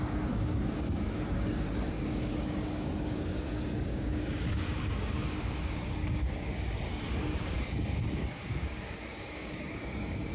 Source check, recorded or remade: remade